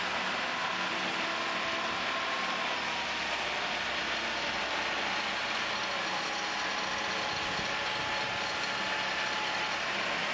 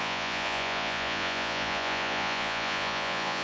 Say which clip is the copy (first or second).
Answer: second